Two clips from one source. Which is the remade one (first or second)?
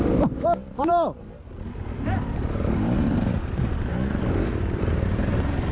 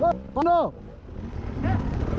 first